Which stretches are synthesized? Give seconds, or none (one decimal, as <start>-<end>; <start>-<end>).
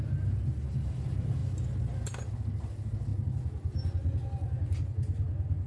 none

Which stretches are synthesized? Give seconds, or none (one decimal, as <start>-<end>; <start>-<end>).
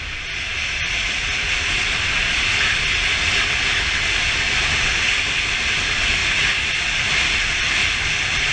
none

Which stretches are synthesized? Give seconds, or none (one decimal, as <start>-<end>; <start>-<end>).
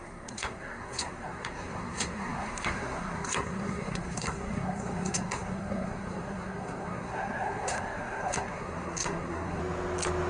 0.0-9.6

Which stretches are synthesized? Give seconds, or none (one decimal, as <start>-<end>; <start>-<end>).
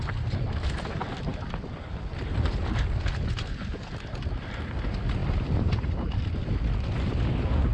none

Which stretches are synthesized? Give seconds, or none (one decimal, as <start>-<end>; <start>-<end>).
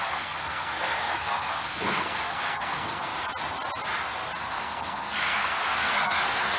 0.0-3.1; 4.4-6.6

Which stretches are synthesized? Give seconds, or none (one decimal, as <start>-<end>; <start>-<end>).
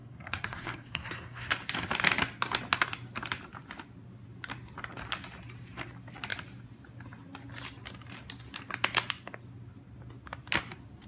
0.0-1.5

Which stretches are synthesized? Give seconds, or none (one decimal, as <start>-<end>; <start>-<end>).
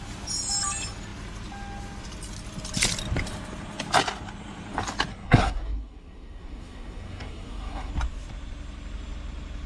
5.1-7.9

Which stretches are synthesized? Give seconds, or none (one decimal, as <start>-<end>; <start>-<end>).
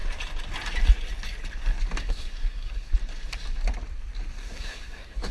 2.0-2.9; 4.4-5.3